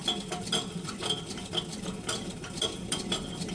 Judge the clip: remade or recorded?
remade